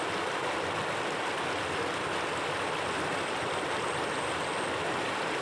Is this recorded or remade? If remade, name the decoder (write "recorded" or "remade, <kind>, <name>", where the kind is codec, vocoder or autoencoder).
recorded